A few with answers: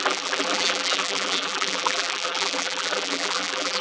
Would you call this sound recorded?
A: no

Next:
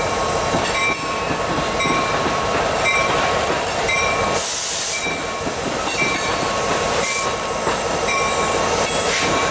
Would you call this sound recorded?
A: no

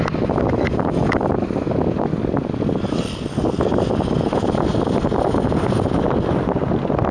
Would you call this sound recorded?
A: yes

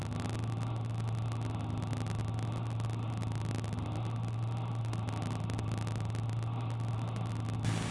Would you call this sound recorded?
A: yes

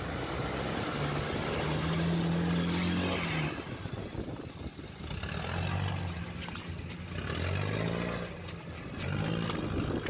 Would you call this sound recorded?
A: yes